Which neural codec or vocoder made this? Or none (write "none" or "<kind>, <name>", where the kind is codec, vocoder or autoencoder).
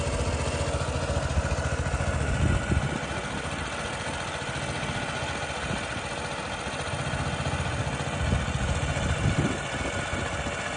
none